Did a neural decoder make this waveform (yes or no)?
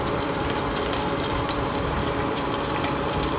yes